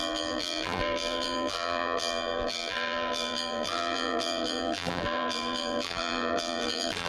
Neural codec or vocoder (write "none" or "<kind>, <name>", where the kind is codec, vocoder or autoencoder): vocoder, BigVGAN v2